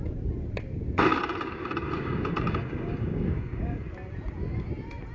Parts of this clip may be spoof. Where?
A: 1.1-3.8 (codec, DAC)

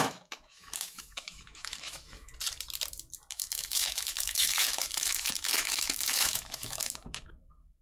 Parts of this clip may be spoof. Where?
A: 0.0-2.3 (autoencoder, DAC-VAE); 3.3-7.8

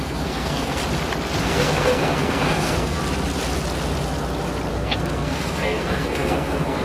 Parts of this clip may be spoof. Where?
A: 0.0-0.8 (codec, SNAC); 1.4-3.0; 4.7-6.8

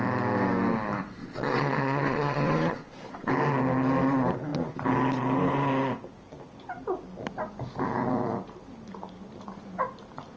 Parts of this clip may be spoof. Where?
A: 1.2-3.3 (vocoder, Vocos)

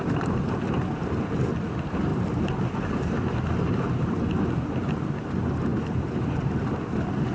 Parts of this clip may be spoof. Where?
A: none